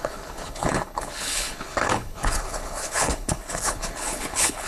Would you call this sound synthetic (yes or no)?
yes